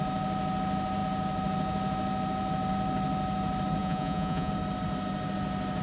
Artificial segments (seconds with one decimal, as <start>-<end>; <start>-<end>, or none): 3.8-4.5